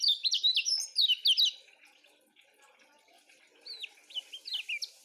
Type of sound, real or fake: real